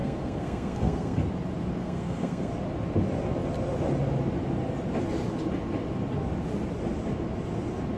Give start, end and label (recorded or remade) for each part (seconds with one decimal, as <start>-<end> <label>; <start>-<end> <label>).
0.0-1.2 remade; 1.2-1.8 recorded; 1.8-2.5 remade; 2.5-8.0 recorded